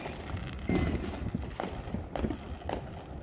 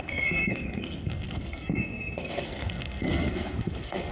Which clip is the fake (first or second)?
second